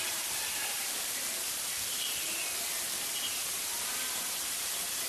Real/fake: fake